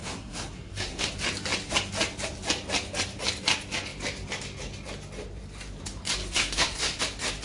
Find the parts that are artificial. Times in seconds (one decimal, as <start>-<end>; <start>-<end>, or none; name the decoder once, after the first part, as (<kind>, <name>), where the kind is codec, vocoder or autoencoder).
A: 0.0-1.1 (codec, SNAC); 6.2-7.0